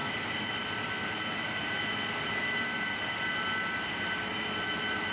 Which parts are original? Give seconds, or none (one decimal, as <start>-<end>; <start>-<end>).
0.0-5.1